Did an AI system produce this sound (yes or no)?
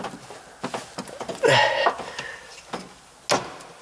no